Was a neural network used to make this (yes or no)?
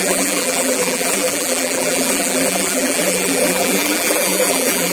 yes